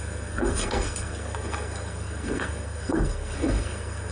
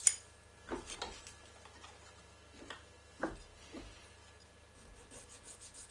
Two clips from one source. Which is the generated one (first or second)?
first